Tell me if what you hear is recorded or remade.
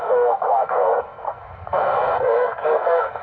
remade